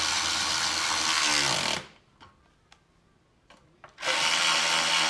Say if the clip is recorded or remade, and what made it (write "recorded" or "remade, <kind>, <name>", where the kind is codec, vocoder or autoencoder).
recorded